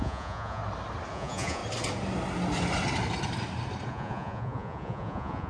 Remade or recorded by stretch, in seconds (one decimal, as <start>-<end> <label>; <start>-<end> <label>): 0.0-0.6 remade; 0.6-1.1 recorded; 1.1-1.6 remade; 1.6-3.9 recorded; 3.9-5.5 remade

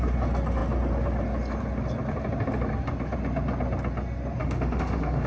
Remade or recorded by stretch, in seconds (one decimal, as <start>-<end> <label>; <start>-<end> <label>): 0.0-4.4 recorded; 4.4-5.3 remade

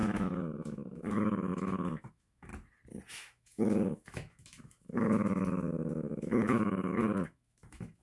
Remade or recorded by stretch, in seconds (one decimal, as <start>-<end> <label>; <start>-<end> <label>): 0.0-2.5 remade; 2.5-3.1 recorded; 3.1-8.0 remade

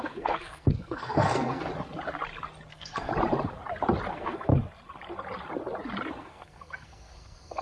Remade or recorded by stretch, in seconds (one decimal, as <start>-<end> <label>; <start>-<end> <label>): 0.0-1.7 remade; 1.7-2.7 recorded; 2.7-3.1 remade; 3.1-4.1 recorded; 4.1-4.5 remade; 4.5-6.2 recorded; 6.2-7.6 remade